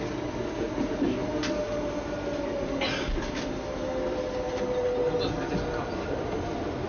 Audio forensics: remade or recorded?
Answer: recorded